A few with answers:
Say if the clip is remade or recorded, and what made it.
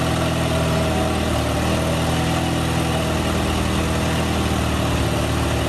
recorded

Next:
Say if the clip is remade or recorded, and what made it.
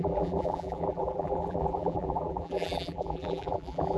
remade, vocoder, BigVGAN v2